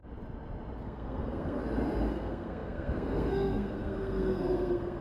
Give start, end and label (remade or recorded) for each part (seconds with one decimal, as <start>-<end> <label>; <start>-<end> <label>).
0.0-0.8 recorded; 0.8-1.6 remade; 1.6-2.1 recorded; 2.1-5.0 remade